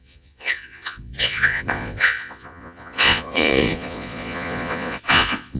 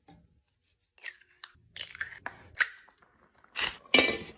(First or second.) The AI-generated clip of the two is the first